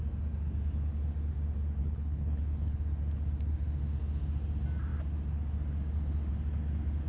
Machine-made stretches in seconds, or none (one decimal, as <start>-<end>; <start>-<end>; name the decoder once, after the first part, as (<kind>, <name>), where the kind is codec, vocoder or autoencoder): 1.8-2.8 (codec, HILCodec)